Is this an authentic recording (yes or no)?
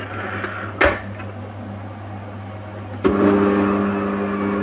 yes